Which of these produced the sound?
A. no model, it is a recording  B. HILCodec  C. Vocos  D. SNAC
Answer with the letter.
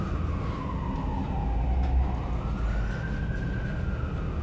A